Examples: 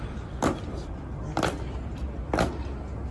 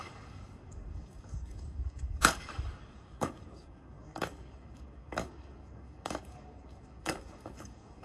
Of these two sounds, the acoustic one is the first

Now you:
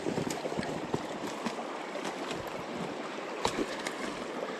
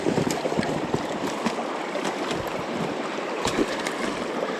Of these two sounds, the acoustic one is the first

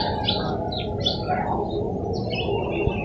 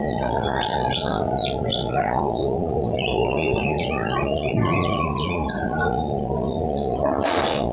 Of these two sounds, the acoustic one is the first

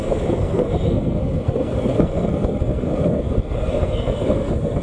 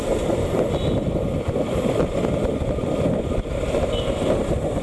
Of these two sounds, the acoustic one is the second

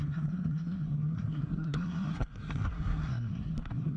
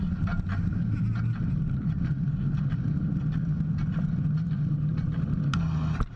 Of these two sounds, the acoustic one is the second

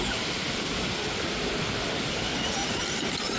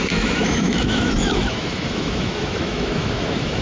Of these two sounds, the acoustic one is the first